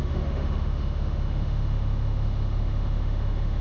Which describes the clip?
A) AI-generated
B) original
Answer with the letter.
A